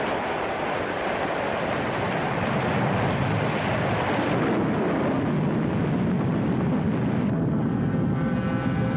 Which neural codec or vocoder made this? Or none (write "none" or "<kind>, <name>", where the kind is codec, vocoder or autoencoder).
none